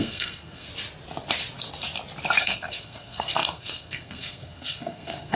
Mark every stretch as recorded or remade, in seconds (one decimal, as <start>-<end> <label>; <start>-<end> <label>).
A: 0.0-0.7 remade; 0.7-2.4 recorded; 2.4-5.3 remade